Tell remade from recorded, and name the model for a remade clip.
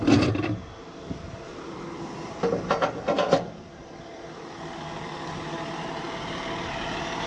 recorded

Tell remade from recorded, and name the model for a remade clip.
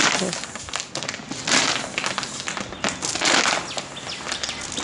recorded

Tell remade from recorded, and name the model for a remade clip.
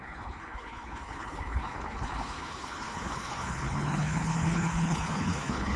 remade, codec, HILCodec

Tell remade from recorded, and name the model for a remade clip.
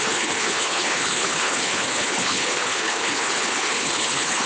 remade, codec, HILCodec